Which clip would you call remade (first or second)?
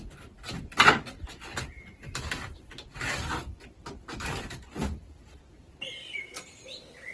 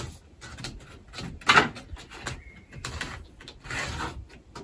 first